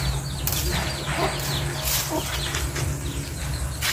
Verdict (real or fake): real